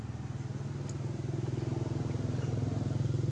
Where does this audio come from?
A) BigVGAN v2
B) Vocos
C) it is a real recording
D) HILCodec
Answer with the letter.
C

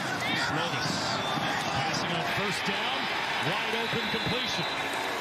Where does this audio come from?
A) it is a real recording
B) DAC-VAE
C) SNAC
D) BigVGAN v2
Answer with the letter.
A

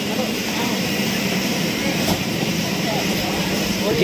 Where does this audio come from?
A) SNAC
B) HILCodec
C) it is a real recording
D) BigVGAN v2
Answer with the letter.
D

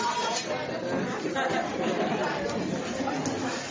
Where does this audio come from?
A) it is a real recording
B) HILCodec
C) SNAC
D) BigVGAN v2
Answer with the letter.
A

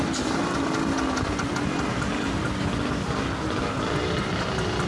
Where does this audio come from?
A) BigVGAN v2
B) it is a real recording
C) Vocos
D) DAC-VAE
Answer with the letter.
B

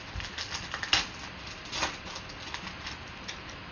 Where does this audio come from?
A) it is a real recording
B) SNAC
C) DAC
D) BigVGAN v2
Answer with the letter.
A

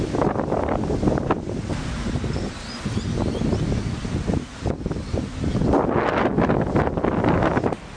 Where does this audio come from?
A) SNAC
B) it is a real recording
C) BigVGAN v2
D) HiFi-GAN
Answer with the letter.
B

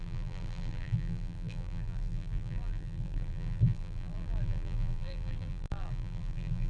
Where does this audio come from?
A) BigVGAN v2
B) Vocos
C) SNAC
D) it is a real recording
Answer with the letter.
A